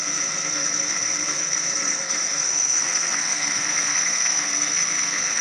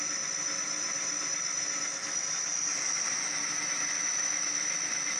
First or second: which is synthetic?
first